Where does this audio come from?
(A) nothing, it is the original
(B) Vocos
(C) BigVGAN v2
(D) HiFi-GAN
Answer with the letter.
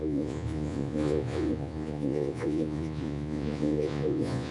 B